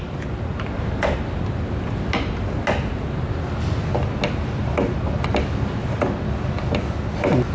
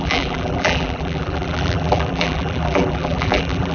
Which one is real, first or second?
first